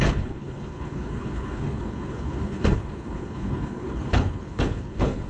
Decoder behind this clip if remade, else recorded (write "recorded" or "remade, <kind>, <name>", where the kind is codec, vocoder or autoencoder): remade, codec, HILCodec